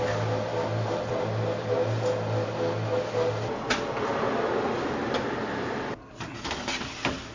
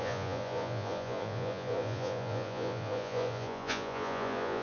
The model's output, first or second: second